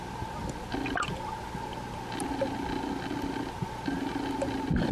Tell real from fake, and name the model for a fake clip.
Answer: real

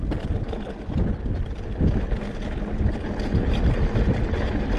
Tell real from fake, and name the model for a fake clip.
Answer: real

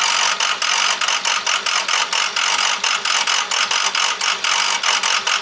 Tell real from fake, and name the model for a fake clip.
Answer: real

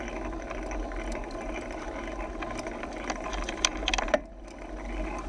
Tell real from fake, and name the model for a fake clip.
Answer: real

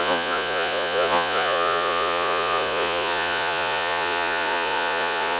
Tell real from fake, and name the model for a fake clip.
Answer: fake, vocoder, Vocos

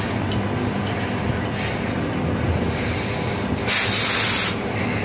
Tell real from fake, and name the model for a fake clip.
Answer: real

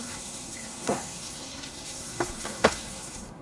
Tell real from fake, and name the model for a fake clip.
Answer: fake, codec, SNAC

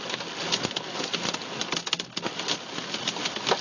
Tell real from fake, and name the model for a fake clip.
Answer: real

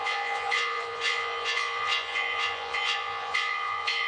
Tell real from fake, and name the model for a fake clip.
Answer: fake, vocoder, Vocos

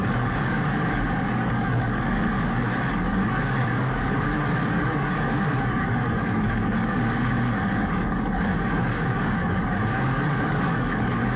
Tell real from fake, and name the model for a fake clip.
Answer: fake, codec, DAC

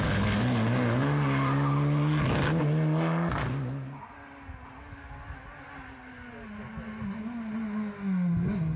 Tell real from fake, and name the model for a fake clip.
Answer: real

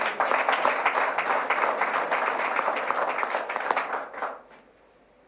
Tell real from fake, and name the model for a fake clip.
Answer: real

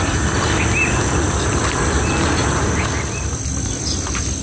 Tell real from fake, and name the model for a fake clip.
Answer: real